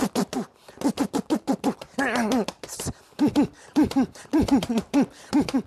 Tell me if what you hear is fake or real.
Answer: fake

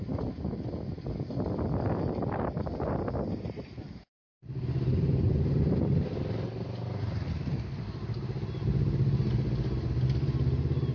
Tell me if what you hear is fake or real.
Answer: real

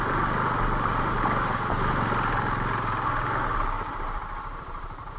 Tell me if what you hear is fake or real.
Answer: real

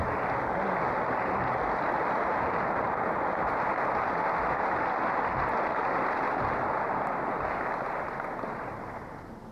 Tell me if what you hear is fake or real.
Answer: real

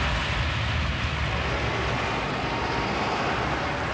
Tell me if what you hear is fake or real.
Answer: real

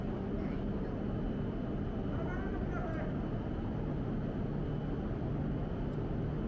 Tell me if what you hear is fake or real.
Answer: real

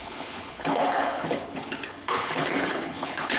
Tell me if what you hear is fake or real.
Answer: fake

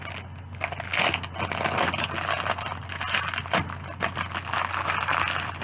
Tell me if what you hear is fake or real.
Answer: real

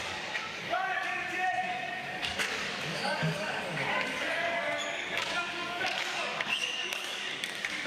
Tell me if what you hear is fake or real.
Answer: fake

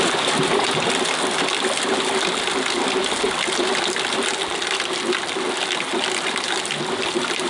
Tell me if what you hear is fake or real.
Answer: fake